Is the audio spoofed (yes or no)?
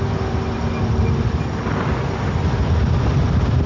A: no